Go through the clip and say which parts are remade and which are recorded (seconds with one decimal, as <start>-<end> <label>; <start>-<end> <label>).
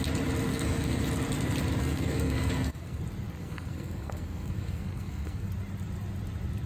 0.0-0.5 recorded; 0.5-1.0 remade; 1.0-1.8 recorded; 1.8-3.0 remade; 3.0-3.4 recorded; 3.4-5.5 remade; 5.5-6.7 recorded